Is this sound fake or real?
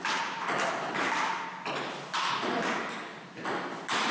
real